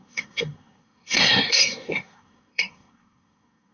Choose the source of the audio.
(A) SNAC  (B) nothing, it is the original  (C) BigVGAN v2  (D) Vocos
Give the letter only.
A